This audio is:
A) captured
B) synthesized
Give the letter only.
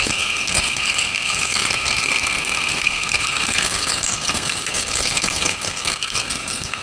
B